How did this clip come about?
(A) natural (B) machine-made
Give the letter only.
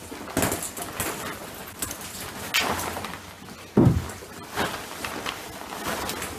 A